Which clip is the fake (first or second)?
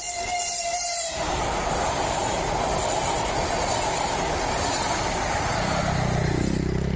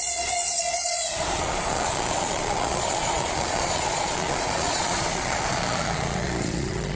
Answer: second